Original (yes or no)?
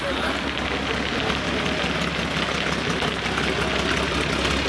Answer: yes